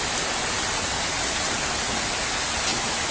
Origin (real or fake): real